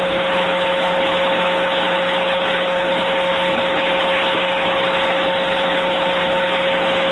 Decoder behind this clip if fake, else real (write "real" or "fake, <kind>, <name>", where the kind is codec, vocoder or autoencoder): fake, codec, HILCodec